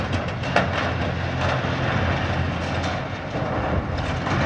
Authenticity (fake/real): real